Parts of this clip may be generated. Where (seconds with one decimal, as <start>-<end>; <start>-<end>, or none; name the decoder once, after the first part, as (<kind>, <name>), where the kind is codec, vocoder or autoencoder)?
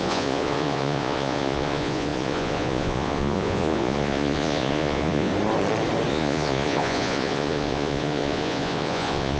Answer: 0.0-5.3 (vocoder, Vocos); 6.1-9.4